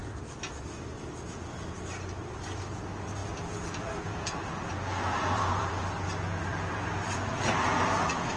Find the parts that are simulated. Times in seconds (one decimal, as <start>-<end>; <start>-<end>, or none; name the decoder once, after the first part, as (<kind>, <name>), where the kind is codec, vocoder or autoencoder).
3.2-8.4 (vocoder, BigVGAN v2)